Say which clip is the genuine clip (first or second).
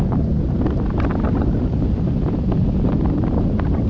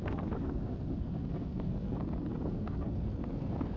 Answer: first